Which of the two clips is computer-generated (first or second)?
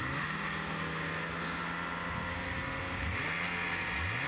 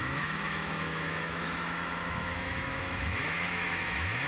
second